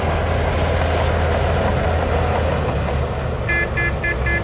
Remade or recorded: recorded